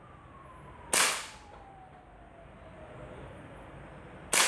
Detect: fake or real real